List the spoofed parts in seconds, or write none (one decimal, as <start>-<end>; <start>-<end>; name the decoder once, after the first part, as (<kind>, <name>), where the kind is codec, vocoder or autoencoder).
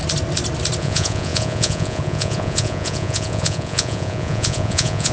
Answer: 0.8-5.1 (vocoder, Vocos)